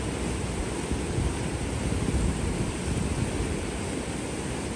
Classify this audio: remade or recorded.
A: recorded